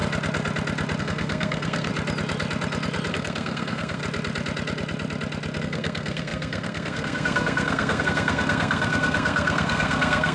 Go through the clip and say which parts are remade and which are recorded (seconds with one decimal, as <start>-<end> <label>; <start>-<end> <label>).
0.0-1.0 recorded; 1.0-1.9 remade; 1.9-3.1 recorded; 3.1-4.0 remade; 4.0-5.6 recorded; 5.6-10.3 remade